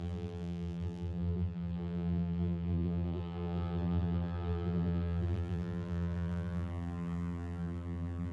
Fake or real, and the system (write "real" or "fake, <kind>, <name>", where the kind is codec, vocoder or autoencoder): fake, vocoder, BigVGAN v2